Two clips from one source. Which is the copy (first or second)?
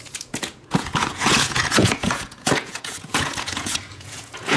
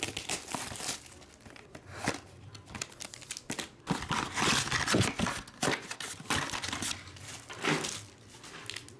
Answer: first